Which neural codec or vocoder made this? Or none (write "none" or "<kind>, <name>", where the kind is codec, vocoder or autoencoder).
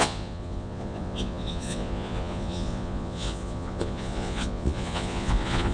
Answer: vocoder, Vocos